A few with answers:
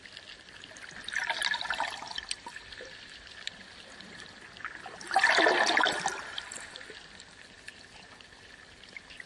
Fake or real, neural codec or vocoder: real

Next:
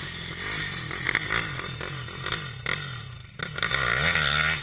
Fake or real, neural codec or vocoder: real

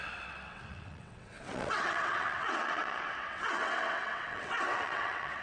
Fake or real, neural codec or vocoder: fake, vocoder, WaveNeXt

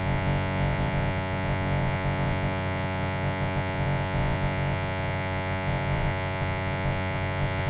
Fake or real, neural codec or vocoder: fake, vocoder, Vocos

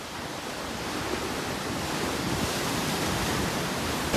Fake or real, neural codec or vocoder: real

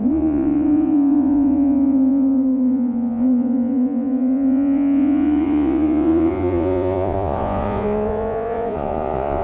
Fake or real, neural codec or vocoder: fake, vocoder, Vocos